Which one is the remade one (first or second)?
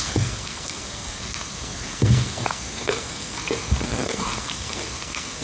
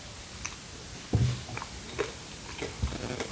first